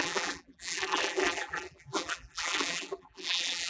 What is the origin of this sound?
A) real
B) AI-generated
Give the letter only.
B